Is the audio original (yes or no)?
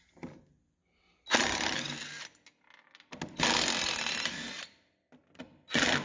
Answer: yes